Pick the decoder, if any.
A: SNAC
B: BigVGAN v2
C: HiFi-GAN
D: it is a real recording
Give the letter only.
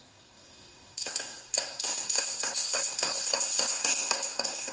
A